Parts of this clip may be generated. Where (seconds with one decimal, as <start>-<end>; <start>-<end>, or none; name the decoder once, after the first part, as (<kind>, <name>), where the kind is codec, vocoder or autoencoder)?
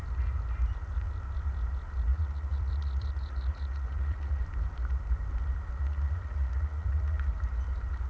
2.1-4.4 (vocoder, Vocos); 5.8-7.3